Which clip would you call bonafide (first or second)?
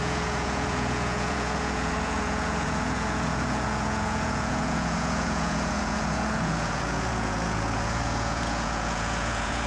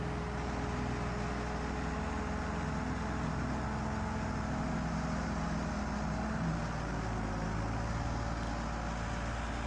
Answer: second